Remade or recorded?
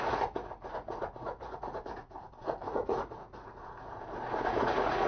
remade